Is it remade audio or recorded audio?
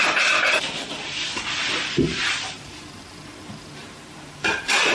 remade